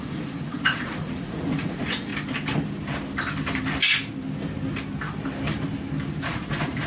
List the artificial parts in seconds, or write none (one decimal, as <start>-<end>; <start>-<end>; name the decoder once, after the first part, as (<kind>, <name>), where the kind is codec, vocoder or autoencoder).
0.0-2.1 (vocoder, Vocos); 6.2-6.9